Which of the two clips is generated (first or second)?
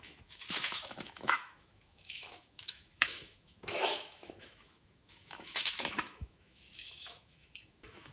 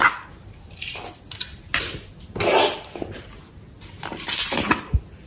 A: first